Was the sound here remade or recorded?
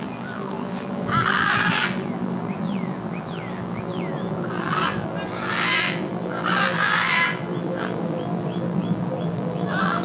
remade